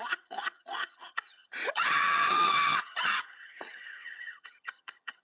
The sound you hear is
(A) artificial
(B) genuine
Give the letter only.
A